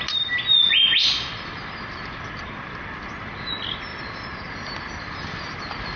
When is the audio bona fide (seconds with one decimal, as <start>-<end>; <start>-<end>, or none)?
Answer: 0.0-6.0